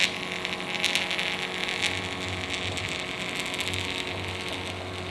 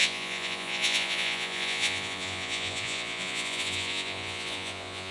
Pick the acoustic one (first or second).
first